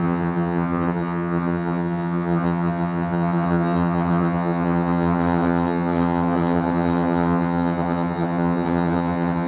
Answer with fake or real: fake